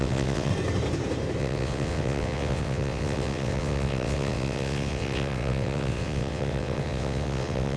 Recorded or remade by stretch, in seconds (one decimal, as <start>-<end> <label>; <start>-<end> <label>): 0.0-0.5 remade; 0.5-1.4 recorded; 1.4-7.8 remade